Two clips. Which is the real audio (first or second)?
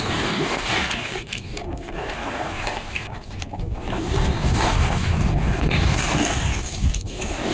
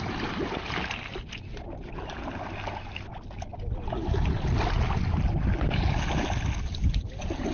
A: second